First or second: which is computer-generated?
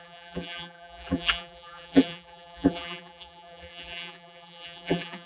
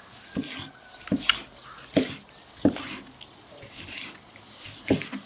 first